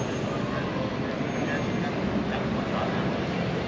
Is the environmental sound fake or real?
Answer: real